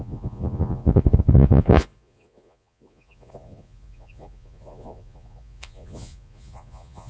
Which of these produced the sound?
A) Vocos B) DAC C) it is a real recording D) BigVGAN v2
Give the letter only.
A